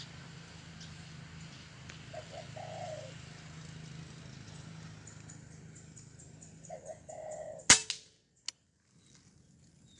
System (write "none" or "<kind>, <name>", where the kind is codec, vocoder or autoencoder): none